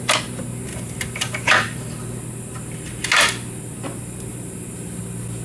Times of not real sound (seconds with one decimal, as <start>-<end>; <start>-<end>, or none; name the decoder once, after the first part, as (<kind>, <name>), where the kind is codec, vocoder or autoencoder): 0.7-2.0 (vocoder, BigVGAN v2); 4.3-5.0